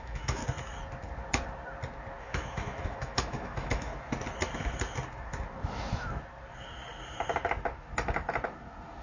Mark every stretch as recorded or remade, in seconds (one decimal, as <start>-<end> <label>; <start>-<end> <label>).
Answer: 0.0-0.4 remade; 0.4-2.2 recorded; 2.2-3.9 remade; 3.9-9.0 recorded